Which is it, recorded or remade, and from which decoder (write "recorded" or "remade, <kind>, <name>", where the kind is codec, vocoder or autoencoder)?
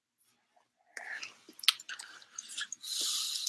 recorded